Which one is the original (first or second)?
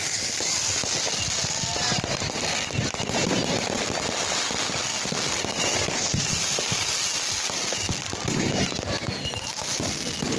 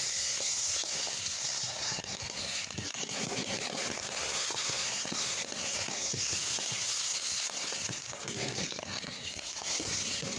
first